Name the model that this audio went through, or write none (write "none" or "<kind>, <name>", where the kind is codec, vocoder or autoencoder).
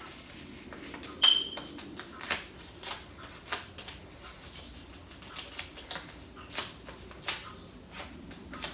none